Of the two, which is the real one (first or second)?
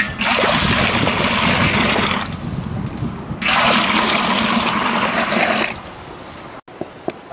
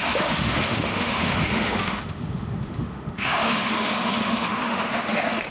first